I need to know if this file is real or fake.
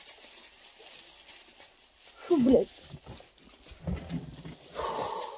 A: real